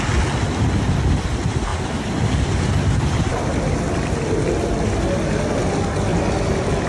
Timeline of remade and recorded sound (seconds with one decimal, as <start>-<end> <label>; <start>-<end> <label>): 0.0-1.7 recorded; 1.7-5.6 remade; 5.6-6.1 recorded; 6.1-6.9 remade